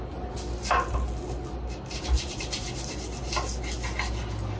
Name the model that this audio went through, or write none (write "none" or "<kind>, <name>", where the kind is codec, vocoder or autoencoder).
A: none